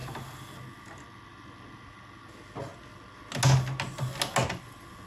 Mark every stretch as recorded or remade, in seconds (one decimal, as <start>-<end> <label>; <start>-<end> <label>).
0.0-5.1 recorded